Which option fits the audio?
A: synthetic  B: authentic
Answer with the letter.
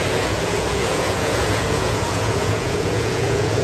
A